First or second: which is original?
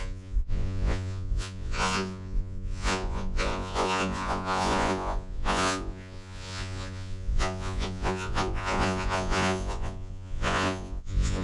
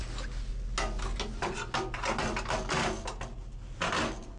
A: second